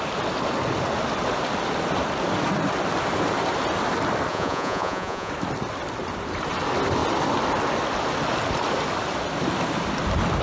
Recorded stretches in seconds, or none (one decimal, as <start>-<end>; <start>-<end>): 0.0-4.3; 5.3-10.4